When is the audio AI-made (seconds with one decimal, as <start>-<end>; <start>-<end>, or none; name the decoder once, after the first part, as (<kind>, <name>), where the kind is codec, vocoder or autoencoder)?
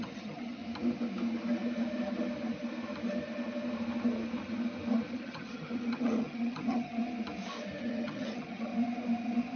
0.0-0.6 (vocoder, HiFi-GAN); 5.1-7.0; 7.8-8.7